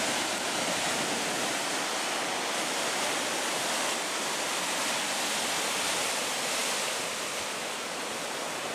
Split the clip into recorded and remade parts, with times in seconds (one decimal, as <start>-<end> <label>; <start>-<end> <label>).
0.0-6.6 recorded; 6.6-8.7 remade